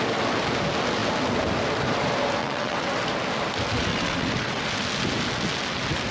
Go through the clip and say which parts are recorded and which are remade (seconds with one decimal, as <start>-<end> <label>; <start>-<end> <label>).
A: 0.0-2.4 recorded; 2.4-2.9 remade; 2.9-3.9 recorded; 3.9-4.6 remade; 4.6-6.1 recorded